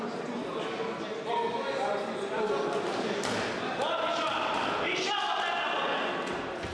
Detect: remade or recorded recorded